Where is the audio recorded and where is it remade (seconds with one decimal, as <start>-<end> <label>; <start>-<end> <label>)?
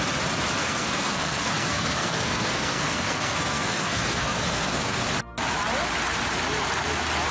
0.0-0.6 recorded; 0.6-5.0 remade; 5.0-7.3 recorded